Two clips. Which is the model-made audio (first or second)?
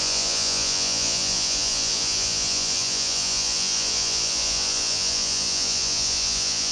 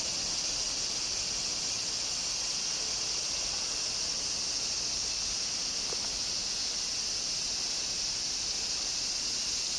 first